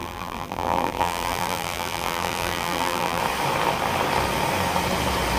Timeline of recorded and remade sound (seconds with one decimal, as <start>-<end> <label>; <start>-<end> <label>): 0.0-3.2 remade; 3.2-5.4 recorded